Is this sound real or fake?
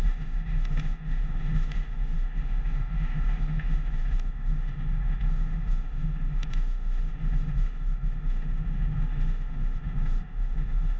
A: fake